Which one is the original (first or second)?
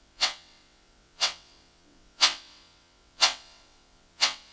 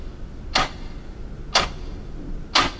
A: second